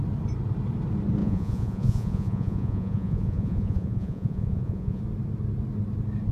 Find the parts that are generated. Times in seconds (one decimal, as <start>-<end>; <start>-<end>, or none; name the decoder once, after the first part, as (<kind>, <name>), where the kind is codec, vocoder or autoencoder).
1.2-5.0 (vocoder, Vocos)